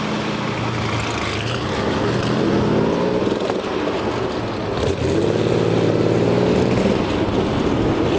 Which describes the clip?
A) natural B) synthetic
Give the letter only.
A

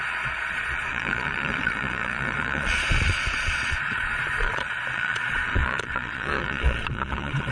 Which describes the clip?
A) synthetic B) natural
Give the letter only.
A